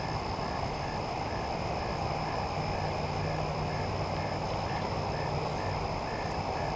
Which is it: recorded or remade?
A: recorded